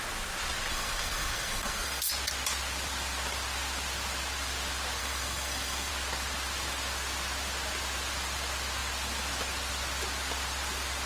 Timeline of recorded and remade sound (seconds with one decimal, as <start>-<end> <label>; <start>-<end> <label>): 0.0-0.7 recorded; 0.7-2.1 remade; 2.1-5.0 recorded; 5.0-5.9 remade; 5.9-11.1 recorded